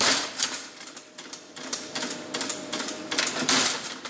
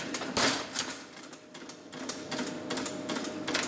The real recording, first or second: second